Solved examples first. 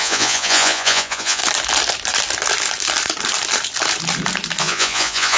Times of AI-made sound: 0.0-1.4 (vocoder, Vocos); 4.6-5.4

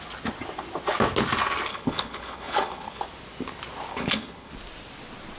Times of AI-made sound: 1.7-3.0 (codec, HILCodec); 3.9-4.5

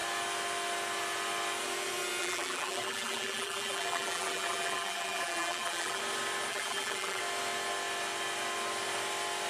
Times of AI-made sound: 2.2-6.0 (vocoder, BigVGAN v2); 6.5-7.2